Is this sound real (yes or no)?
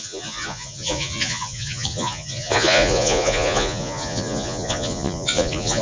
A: no